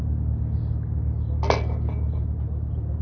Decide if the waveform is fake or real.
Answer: real